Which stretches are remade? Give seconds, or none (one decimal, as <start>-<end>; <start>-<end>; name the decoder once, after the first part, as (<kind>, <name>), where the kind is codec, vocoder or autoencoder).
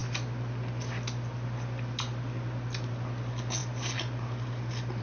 none